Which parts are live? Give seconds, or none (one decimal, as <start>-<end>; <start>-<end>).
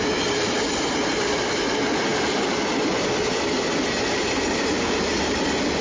0.0-5.8